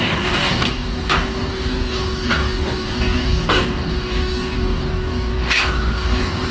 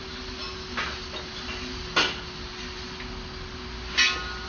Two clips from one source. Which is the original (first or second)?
second